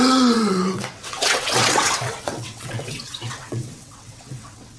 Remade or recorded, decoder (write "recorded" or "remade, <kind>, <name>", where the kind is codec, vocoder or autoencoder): remade, vocoder, WaveNeXt